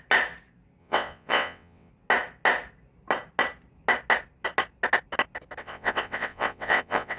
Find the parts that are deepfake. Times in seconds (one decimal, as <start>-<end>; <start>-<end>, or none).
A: 0.8-1.9; 5.6-7.2